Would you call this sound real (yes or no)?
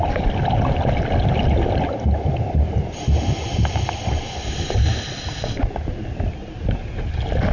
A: yes